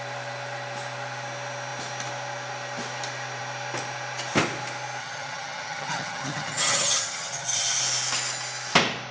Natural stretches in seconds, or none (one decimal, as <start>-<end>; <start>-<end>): 0.0-5.0; 7.8-9.1